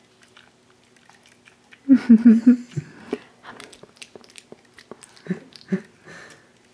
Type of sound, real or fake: real